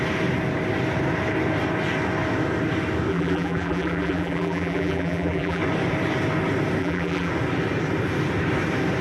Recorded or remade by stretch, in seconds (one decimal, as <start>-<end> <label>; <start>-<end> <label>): 0.0-3.1 recorded; 3.1-5.6 remade; 5.6-6.8 recorded; 6.8-7.3 remade; 7.3-9.0 recorded